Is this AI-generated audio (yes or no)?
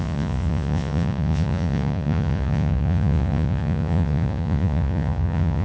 yes